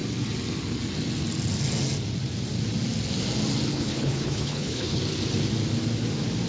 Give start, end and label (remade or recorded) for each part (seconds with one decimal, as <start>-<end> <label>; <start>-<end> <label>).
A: 0.0-3.7 recorded; 3.7-5.0 remade; 5.0-6.5 recorded

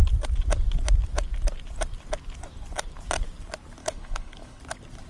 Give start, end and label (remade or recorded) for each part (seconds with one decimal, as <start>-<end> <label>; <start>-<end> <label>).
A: 0.0-3.8 recorded; 3.8-4.6 remade; 4.6-5.1 recorded

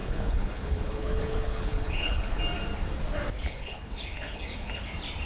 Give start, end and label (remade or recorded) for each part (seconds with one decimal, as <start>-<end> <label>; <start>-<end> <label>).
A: 0.0-2.4 remade; 2.4-3.4 recorded; 3.4-4.8 remade; 4.8-5.3 recorded

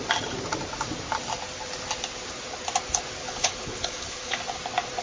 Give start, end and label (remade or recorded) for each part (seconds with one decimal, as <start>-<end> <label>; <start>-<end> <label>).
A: 0.0-3.2 recorded; 3.2-4.4 remade; 4.4-5.0 recorded

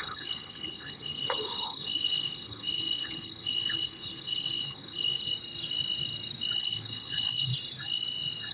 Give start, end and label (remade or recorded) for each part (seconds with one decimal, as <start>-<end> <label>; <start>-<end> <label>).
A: 0.0-5.3 remade; 5.3-6.6 recorded; 6.6-7.5 remade; 7.5-8.5 recorded

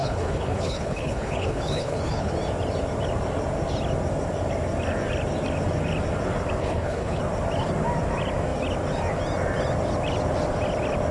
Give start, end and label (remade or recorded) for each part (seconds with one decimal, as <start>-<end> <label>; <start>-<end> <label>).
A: 0.0-2.3 remade; 2.3-6.6 recorded; 6.6-7.2 remade; 7.2-11.1 recorded